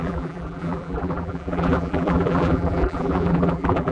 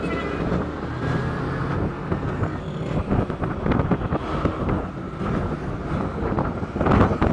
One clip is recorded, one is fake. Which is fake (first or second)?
first